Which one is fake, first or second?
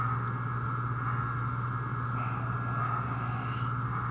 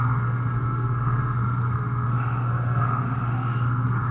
second